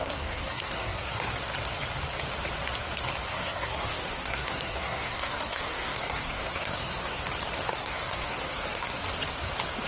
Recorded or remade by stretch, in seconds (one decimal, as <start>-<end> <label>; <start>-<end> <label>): 0.0-1.3 remade; 1.3-3.3 recorded; 3.3-7.2 remade; 7.2-7.7 recorded; 7.7-9.0 remade; 9.0-9.9 recorded